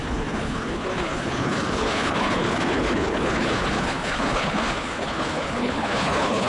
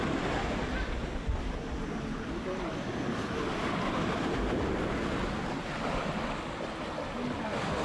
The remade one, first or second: first